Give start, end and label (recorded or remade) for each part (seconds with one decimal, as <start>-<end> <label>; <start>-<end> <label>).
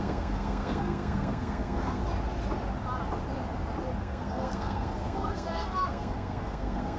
0.0-2.0 remade; 2.0-4.0 recorded; 4.0-7.0 remade